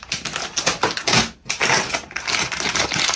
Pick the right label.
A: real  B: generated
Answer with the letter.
A